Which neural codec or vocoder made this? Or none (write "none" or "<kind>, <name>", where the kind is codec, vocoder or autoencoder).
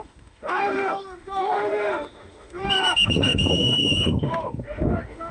autoencoder, DAC-VAE